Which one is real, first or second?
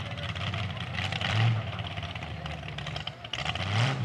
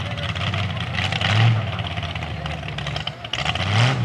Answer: second